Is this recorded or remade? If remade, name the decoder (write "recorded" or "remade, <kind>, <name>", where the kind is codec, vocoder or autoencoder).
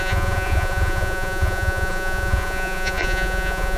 remade, vocoder, Vocos